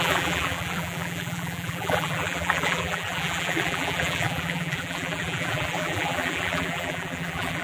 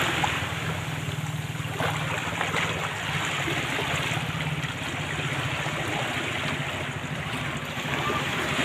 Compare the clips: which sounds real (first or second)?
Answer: second